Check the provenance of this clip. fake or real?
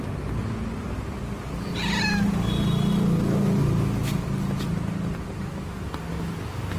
real